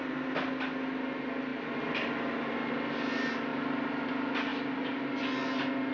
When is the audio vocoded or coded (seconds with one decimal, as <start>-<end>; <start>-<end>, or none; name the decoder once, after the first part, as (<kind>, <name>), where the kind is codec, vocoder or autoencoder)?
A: none